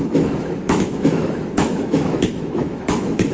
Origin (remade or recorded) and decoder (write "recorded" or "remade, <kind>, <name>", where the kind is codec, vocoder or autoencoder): remade, autoencoder, DAC-VAE